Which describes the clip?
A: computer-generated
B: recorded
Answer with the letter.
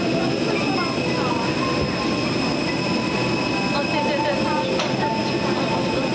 B